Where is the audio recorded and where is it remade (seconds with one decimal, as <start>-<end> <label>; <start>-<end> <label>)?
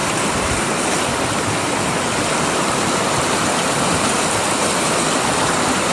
0.0-0.6 remade; 0.6-5.9 recorded